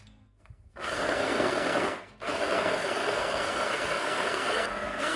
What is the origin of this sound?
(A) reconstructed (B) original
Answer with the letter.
A